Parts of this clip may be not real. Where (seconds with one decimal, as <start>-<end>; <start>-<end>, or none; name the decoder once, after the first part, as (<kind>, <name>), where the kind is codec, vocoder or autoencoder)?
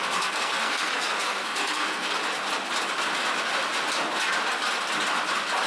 0.0-2.1 (codec, SNAC)